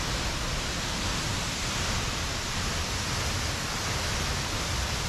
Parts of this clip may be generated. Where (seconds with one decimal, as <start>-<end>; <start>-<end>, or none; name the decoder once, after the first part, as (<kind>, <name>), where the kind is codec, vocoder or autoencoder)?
1.3-2.9 (vocoder, BigVGAN v2)